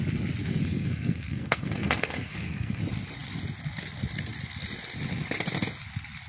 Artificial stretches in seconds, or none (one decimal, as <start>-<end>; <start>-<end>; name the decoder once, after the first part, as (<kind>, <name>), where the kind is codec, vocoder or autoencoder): 0.4-2.8 (codec, SNAC)